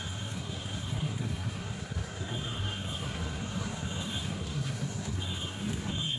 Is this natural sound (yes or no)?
no